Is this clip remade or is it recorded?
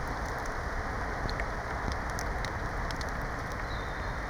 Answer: recorded